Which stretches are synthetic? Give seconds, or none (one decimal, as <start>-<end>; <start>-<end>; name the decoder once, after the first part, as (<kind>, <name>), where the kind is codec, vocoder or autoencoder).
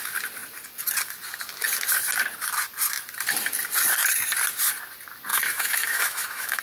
5.3-6.6 (autoencoder, DAC-VAE)